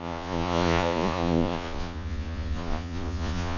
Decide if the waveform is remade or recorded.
remade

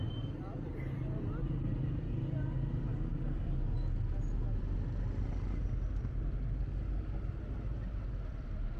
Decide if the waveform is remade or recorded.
recorded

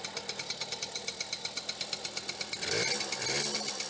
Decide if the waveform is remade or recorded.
recorded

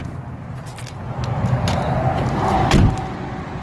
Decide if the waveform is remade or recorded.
recorded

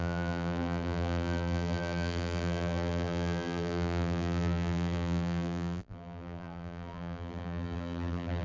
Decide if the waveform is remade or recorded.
remade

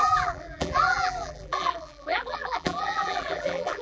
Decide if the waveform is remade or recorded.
remade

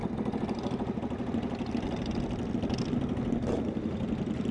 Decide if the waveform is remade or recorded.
recorded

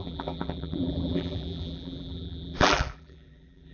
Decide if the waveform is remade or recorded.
remade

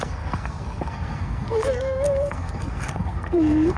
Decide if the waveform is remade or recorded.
remade